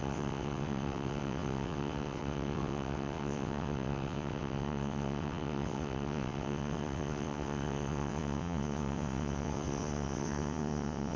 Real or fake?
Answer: fake